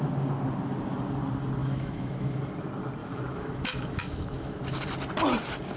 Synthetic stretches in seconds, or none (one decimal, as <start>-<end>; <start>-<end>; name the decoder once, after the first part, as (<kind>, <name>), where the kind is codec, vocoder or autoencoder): 1.6-2.4 (autoencoder, DAC-VAE); 3.0-4.6